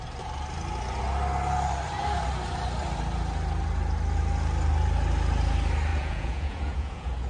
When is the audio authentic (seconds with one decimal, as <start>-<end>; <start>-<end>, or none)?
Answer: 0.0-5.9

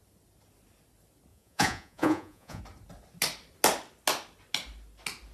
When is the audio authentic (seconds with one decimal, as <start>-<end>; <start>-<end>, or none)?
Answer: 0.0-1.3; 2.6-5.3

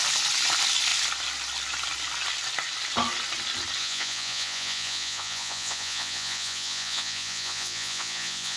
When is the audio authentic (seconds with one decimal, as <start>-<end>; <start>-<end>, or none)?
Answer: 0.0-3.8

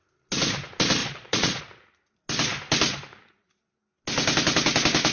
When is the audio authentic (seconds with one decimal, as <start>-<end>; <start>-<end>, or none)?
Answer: 0.0-1.0; 1.6-5.1

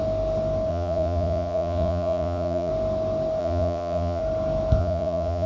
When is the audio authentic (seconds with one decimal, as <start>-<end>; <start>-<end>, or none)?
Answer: 0.0-0.7; 2.7-3.4; 4.2-4.8

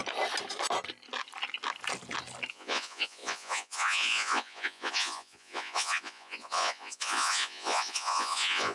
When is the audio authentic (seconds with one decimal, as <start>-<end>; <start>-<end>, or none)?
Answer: 0.0-2.5